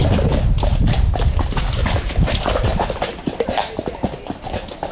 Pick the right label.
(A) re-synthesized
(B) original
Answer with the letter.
B